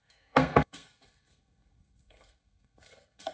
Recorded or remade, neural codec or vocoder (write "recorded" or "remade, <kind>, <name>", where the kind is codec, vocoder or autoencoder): remade, codec, SNAC